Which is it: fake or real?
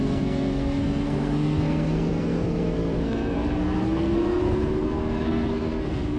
fake